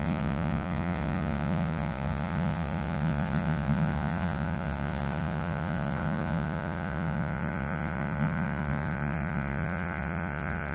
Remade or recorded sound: remade